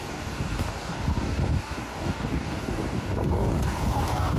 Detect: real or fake fake